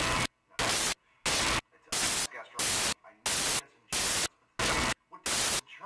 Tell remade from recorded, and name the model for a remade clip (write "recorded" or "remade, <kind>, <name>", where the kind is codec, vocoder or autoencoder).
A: recorded